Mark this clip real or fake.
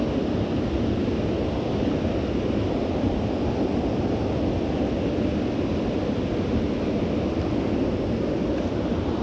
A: real